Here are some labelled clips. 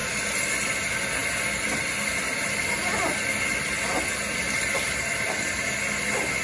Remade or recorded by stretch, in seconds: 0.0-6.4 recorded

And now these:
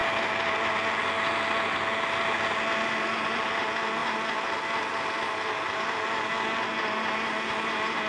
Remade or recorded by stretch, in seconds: 0.0-8.1 recorded